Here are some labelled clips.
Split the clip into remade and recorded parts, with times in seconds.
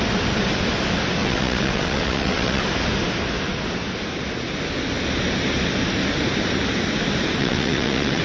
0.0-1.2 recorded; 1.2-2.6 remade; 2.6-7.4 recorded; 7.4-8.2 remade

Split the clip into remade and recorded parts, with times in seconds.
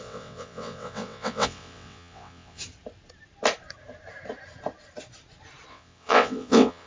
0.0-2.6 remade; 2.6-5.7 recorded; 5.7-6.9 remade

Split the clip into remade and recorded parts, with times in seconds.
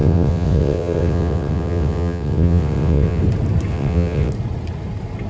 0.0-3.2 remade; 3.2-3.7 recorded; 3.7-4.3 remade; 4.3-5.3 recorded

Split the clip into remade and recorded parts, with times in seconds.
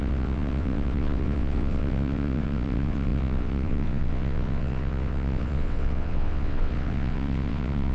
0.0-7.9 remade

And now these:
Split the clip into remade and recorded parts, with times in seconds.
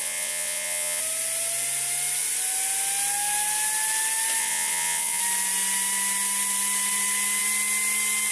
0.0-1.0 remade; 1.0-4.4 recorded; 4.4-5.2 remade; 5.2-8.3 recorded